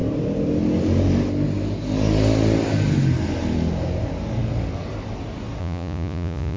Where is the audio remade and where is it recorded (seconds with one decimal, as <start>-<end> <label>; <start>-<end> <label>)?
0.0-5.6 recorded; 5.6-6.6 remade